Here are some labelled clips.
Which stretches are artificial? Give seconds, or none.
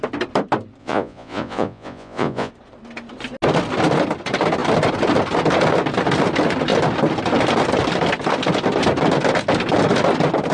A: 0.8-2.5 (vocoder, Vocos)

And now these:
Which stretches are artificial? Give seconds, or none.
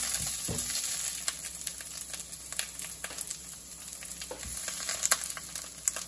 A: 1.5-2.1 (vocoder, BigVGAN v2); 3.3-5.4